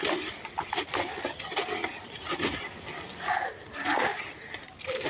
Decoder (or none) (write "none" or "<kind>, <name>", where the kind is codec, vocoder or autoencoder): none